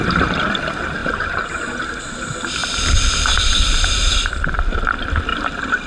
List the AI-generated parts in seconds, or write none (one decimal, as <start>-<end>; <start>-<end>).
1.0-1.6; 2.6-4.6; 5.3-5.9